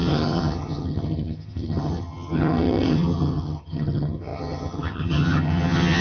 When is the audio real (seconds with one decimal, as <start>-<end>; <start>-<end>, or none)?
none